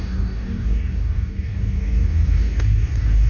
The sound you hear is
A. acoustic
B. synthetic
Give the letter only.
B